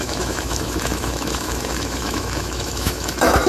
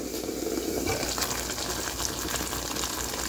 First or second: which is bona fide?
second